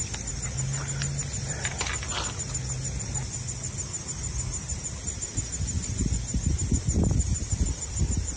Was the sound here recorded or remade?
recorded